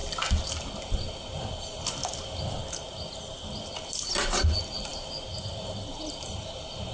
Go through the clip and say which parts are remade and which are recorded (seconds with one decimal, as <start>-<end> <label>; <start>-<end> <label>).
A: 0.0-6.9 recorded